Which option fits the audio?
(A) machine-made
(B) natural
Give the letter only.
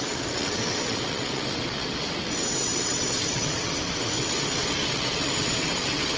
A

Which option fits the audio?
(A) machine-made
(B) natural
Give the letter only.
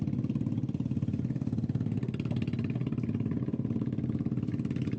B